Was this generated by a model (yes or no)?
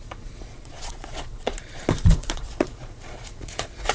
yes